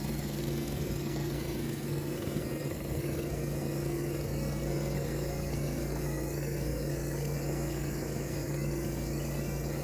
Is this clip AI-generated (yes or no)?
yes